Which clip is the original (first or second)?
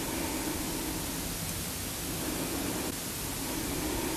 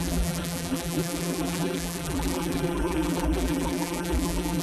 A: first